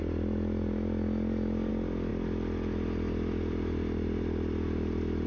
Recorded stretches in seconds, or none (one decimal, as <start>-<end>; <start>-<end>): 0.0-5.3